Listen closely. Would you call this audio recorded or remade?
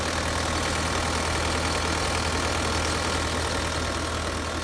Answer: recorded